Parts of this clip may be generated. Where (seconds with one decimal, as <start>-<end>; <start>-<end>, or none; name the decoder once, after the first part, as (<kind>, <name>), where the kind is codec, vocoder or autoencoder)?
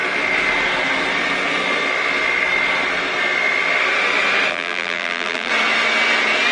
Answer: 4.5-5.5 (vocoder, BigVGAN v2)